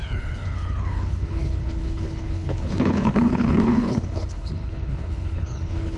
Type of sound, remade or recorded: remade